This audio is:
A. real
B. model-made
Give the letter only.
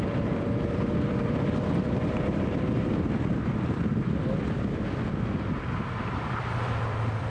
B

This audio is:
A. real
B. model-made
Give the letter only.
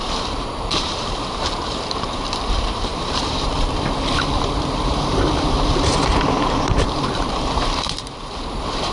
B